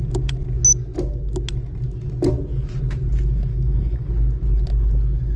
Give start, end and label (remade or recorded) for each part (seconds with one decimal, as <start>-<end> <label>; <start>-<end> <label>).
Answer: 0.0-3.5 recorded; 3.5-4.1 remade; 4.1-5.4 recorded